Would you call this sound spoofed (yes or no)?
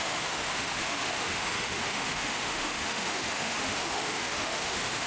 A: yes